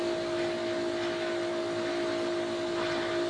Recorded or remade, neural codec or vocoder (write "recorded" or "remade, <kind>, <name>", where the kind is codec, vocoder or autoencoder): recorded